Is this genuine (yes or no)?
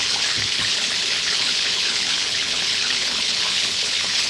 no